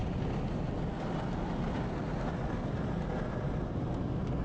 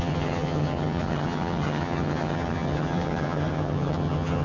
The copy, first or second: second